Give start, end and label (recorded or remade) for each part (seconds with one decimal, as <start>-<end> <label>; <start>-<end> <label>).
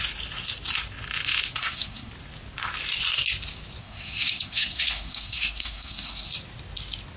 0.0-1.6 recorded; 1.6-2.1 remade; 2.1-3.8 recorded; 3.8-6.3 remade; 6.3-7.2 recorded